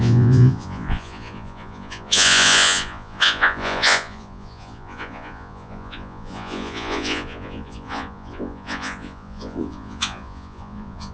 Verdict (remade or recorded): remade